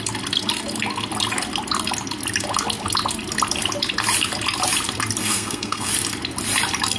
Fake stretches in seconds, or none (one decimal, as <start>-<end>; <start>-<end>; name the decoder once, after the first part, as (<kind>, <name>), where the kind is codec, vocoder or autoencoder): 5.2-5.9 (codec, SNAC)